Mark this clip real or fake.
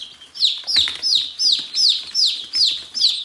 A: real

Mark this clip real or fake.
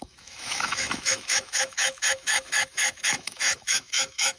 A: fake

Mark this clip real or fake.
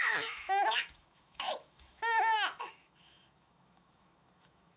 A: fake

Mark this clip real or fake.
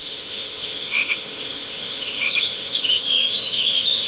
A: fake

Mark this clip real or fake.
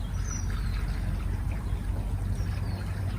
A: real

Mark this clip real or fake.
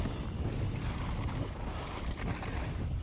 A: real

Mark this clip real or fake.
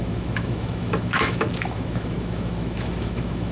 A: fake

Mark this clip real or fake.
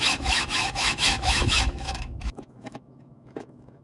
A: fake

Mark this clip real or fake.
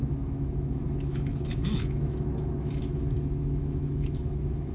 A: fake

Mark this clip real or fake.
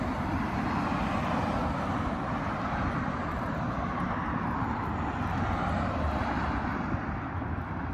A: real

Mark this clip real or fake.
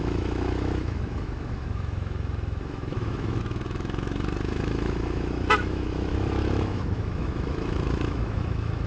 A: fake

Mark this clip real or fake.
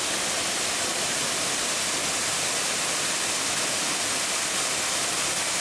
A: real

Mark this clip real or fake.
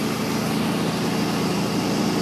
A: real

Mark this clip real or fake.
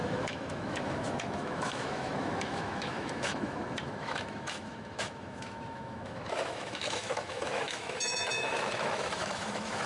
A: fake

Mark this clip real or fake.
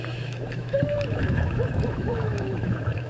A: fake